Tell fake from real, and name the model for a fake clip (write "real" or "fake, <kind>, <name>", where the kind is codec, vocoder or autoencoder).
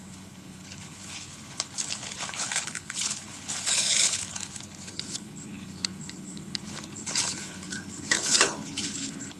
fake, codec, HILCodec